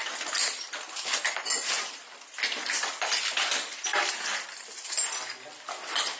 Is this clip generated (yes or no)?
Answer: yes